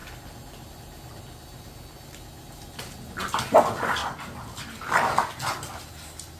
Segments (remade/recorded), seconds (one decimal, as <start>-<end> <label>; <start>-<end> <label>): 0.0-4.0 recorded; 4.0-4.8 remade; 4.8-6.4 recorded